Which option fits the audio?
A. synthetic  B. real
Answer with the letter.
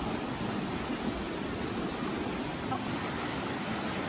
B